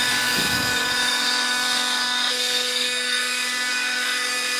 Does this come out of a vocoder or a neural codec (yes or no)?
yes